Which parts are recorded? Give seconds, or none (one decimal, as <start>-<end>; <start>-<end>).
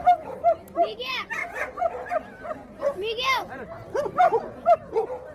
0.0-1.4; 2.1-4.2; 4.7-5.3